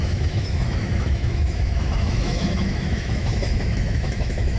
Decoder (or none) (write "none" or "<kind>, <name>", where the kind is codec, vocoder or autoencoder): autoencoder, DAC-VAE